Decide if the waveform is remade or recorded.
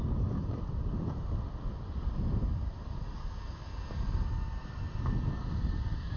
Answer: recorded